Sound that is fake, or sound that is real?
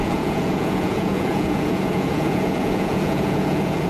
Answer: fake